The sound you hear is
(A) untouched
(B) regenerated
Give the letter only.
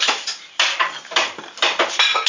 A